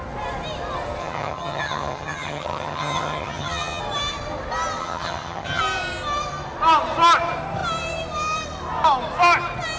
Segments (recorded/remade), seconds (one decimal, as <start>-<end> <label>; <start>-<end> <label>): 0.0-1.0 recorded; 1.0-3.8 remade; 3.8-4.8 recorded; 4.8-5.6 remade; 5.6-9.8 recorded